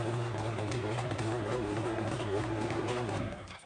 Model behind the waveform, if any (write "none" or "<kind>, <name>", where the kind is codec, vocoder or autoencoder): codec, SNAC